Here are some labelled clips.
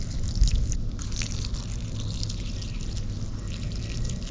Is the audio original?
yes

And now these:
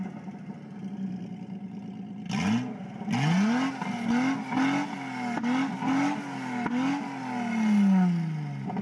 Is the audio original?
yes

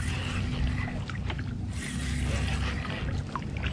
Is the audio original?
yes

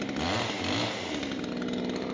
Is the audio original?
yes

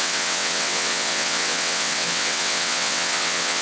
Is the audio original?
no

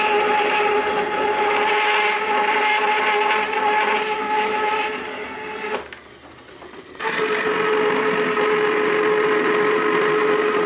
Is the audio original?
yes